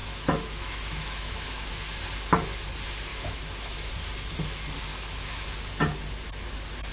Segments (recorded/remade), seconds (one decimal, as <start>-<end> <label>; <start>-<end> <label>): 0.0-1.7 remade; 1.7-3.1 recorded; 3.1-3.9 remade; 3.9-4.9 recorded; 4.9-5.5 remade; 5.5-6.9 recorded